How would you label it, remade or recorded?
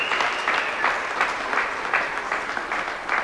recorded